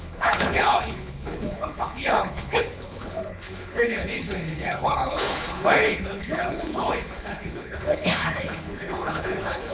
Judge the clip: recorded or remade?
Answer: remade